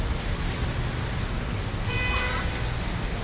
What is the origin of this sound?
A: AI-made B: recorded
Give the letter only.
B